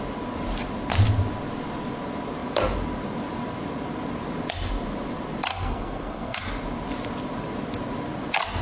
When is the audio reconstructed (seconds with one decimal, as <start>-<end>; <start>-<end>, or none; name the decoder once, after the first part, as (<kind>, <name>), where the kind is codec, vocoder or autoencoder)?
5.5-6.4 (codec, SNAC)

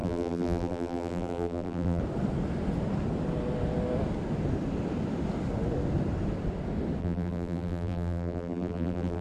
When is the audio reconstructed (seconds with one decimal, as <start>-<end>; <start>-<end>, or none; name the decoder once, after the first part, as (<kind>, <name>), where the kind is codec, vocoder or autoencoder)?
0.0-2.0 (vocoder, BigVGAN v2); 7.0-9.2

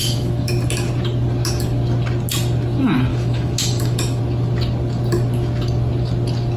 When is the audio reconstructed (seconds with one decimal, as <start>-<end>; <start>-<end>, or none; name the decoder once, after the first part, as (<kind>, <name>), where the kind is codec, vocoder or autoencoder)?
0.0-0.5 (autoencoder, DAC-VAE); 3.1-4.2

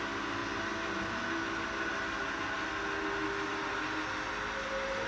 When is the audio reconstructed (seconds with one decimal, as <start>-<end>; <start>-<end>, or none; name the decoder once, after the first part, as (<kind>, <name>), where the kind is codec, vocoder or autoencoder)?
none

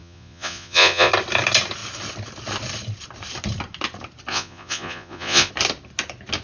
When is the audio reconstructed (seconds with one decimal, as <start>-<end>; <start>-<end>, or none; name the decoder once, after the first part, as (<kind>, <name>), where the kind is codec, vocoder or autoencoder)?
0.0-1.1 (vocoder, Vocos); 4.3-5.5

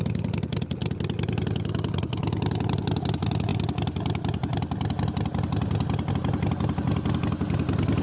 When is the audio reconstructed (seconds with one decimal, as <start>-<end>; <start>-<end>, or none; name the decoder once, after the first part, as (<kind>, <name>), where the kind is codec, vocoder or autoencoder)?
none

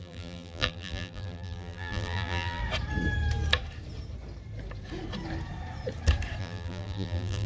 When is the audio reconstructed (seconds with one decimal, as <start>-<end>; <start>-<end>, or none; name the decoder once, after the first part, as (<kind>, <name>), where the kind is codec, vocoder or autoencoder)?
0.0-2.6 (vocoder, BigVGAN v2); 6.4-7.5